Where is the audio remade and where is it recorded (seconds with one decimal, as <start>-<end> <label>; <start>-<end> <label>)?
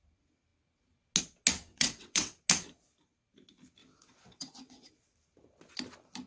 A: 0.0-1.7 recorded; 1.7-2.4 remade; 2.4-3.8 recorded; 3.8-4.9 remade; 4.9-6.3 recorded